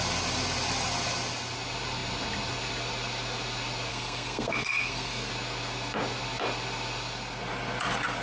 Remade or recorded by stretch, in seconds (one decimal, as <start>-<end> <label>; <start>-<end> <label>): 0.0-3.9 recorded; 3.9-5.3 remade; 5.3-8.2 recorded